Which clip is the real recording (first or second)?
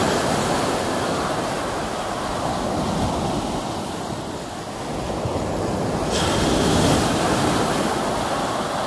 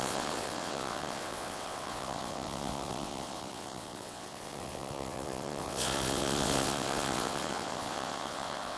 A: first